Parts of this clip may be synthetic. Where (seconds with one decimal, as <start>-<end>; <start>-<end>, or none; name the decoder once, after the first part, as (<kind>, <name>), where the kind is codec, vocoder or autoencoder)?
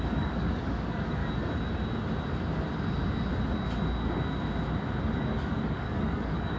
0.0-1.2 (codec, DAC); 5.2-6.6